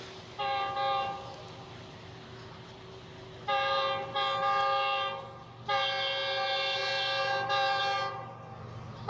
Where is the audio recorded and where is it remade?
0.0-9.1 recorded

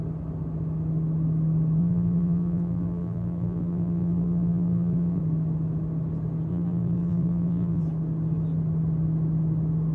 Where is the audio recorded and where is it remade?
0.0-1.8 recorded; 1.8-5.2 remade; 5.2-6.5 recorded; 6.5-7.8 remade; 7.8-9.9 recorded

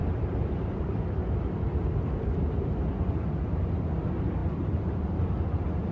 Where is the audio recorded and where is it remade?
0.0-4.4 recorded; 4.4-5.2 remade; 5.2-5.9 recorded

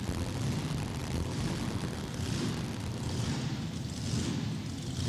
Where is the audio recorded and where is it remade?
0.0-1.0 recorded; 1.0-4.1 remade; 4.1-5.1 recorded

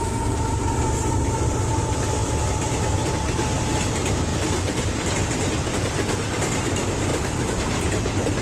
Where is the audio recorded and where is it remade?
0.0-4.3 recorded; 4.3-5.0 remade; 5.0-7.1 recorded; 7.1-8.4 remade